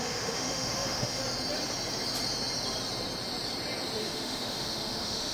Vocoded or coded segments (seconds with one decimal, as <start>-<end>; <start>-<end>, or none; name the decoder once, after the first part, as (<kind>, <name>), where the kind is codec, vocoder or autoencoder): 0.0-1.2 (autoencoder, DAC-VAE); 4.0-5.3

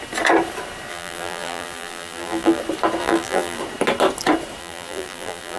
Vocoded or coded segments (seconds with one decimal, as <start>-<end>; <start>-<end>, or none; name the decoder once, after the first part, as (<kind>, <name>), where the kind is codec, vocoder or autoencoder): 0.9-2.6 (vocoder, BigVGAN v2); 3.0-3.6; 4.6-5.6

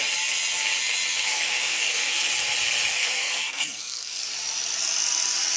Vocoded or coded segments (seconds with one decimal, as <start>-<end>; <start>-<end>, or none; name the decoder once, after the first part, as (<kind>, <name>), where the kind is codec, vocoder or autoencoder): 1.2-2.3 (codec, SNAC); 2.9-4.2

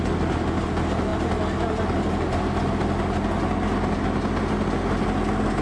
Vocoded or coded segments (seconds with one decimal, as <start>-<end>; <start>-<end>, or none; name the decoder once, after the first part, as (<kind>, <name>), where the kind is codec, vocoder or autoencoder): none

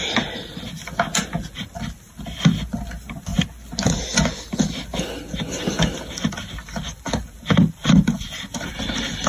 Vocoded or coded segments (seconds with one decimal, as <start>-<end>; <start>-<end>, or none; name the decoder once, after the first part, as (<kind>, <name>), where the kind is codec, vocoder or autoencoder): 1.5-3.3 (vocoder, BigVGAN v2); 6.1-9.3

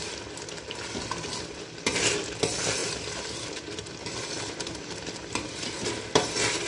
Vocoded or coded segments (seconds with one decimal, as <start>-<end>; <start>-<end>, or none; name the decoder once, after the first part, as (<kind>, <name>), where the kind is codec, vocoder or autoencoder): none